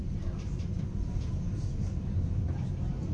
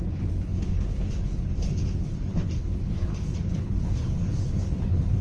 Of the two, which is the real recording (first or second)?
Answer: first